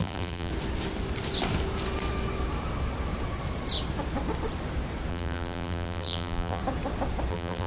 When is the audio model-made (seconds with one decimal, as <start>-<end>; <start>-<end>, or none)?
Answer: 0.0-0.5; 5.1-6.6; 7.3-7.7